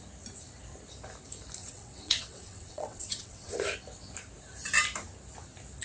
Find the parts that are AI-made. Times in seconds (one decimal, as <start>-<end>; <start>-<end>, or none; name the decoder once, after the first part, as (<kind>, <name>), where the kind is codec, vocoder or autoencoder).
1.6-3.5 (vocoder, WaveNeXt)